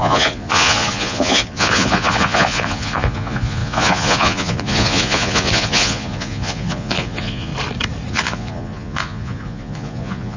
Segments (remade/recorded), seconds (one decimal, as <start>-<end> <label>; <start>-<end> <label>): 0.0-7.5 remade; 7.5-8.1 recorded; 8.1-10.4 remade